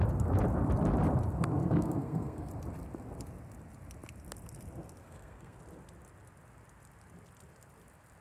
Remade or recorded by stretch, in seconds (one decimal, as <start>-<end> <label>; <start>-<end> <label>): 0.0-1.6 recorded; 1.6-2.5 remade; 2.5-5.0 recorded; 5.0-5.6 remade; 5.6-8.2 recorded